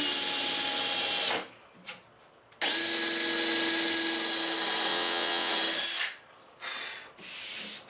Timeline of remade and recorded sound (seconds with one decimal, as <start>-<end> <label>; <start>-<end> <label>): 0.0-4.9 recorded; 4.9-5.5 remade; 5.5-7.9 recorded